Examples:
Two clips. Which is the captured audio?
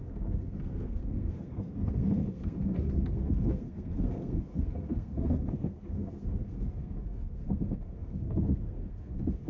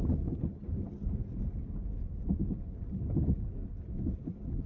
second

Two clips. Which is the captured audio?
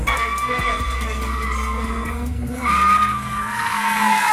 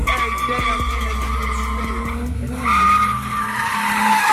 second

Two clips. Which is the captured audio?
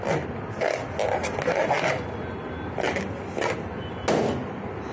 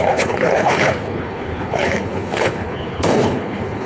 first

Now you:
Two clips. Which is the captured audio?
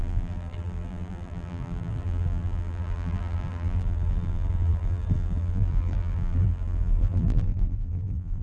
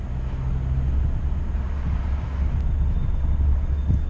second